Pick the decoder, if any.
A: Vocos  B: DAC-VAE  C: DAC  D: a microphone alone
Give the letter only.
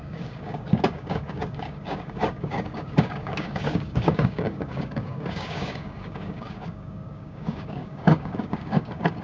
C